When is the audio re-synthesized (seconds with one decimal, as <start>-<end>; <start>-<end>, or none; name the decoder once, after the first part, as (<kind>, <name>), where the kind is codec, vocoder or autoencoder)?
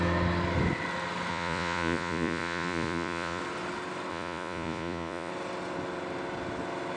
1.3-3.4 (vocoder, Vocos); 4.1-5.3